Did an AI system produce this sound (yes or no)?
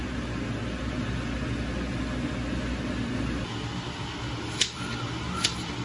no